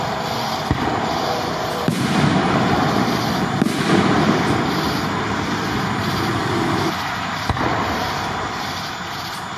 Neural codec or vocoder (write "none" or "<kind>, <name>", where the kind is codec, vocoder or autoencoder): vocoder, BigVGAN v2